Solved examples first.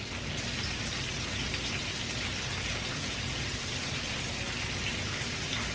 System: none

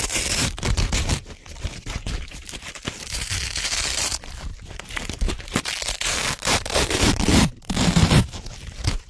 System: vocoder, BigVGAN v2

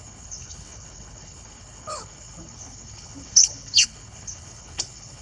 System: codec, HILCodec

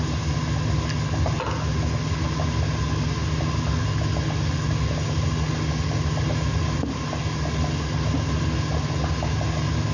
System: none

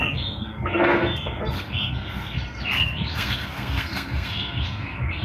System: codec, SNAC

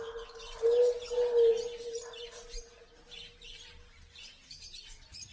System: none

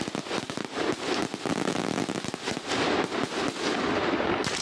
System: none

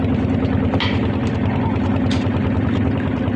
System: none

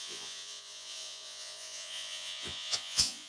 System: vocoder, Vocos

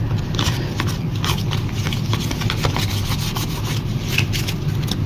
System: none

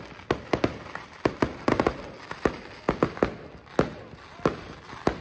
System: none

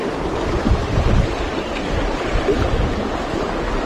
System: none